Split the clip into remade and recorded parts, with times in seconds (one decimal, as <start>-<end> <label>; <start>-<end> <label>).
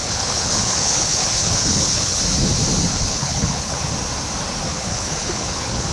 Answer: 0.0-2.2 remade; 2.2-2.9 recorded; 2.9-3.9 remade; 3.9-4.7 recorded; 4.7-5.9 remade